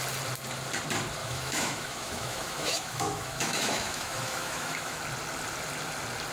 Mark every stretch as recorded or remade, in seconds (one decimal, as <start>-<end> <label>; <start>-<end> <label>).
0.0-1.2 recorded; 1.2-5.0 remade; 5.0-6.3 recorded